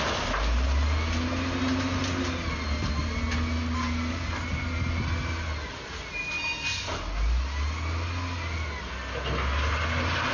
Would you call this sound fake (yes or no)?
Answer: no